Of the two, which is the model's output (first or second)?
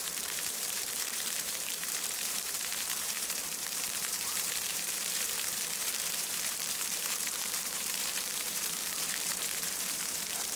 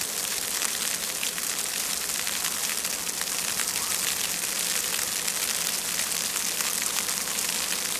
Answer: first